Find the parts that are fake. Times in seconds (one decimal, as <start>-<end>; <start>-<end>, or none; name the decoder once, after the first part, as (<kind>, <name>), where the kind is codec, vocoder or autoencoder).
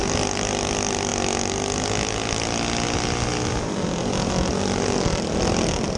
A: none